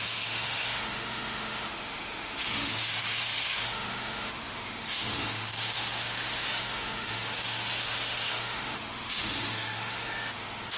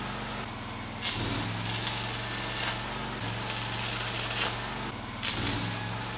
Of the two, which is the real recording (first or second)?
second